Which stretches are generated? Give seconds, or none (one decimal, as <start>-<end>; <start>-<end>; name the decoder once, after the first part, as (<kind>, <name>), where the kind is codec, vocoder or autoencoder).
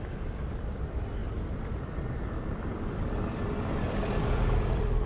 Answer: 0.0-5.1 (vocoder, BigVGAN v2)